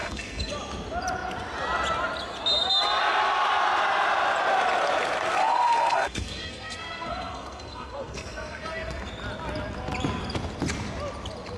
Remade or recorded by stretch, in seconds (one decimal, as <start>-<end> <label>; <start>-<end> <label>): 0.0-0.5 remade; 0.5-5.4 recorded; 5.4-9.1 remade; 9.1-11.6 recorded